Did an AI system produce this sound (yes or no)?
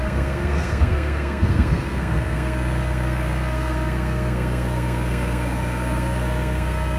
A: yes